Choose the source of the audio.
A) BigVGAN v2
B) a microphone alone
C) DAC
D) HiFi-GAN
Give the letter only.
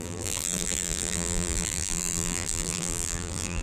A